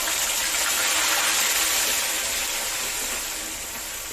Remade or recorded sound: recorded